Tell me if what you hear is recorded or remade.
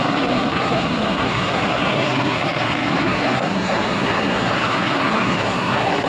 remade